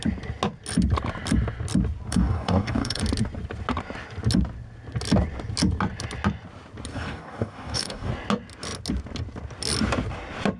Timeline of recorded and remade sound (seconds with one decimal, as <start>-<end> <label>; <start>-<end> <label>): 0.0-2.1 recorded; 2.1-3.0 remade; 3.0-6.9 recorded; 6.9-8.1 remade; 8.1-10.6 recorded